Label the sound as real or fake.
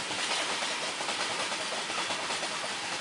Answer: real